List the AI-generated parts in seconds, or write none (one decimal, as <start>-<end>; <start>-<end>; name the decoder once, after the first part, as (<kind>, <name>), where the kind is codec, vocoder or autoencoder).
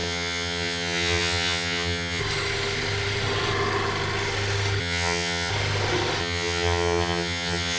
0.0-2.2 (vocoder, HiFi-GAN); 4.8-5.5; 6.2-7.8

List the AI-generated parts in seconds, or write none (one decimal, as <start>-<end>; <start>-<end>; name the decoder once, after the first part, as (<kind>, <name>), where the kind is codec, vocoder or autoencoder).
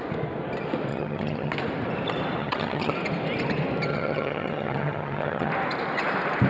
0.9-1.5 (vocoder, HiFi-GAN); 2.4-2.9; 3.9-5.5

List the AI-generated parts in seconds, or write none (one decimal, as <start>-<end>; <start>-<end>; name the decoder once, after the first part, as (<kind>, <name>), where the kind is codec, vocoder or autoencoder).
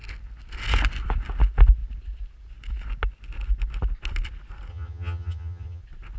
4.7-5.8 (vocoder, HiFi-GAN)